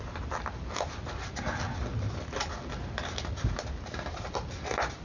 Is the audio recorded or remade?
recorded